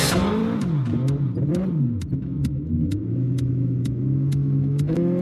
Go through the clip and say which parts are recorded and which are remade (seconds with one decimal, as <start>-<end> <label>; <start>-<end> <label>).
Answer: 0.0-0.4 remade; 0.4-2.1 recorded; 2.1-5.2 remade